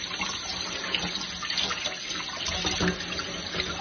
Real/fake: real